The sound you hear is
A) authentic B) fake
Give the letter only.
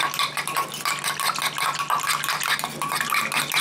A